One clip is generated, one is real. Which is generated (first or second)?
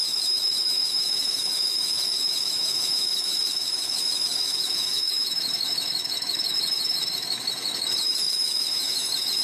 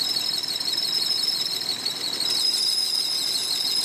first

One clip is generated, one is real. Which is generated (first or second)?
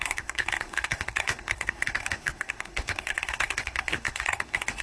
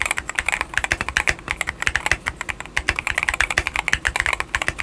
first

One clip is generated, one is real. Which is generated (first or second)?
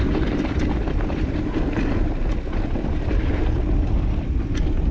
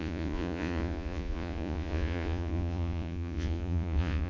second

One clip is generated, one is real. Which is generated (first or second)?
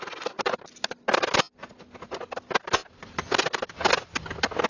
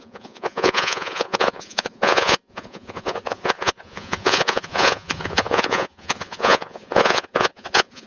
second